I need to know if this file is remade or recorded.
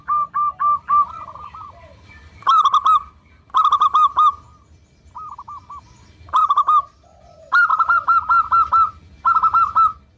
recorded